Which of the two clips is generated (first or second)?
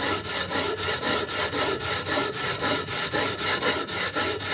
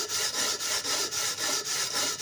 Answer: second